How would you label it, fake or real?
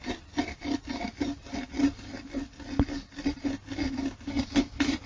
real